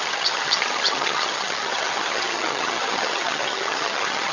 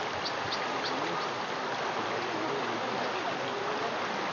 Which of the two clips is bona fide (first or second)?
second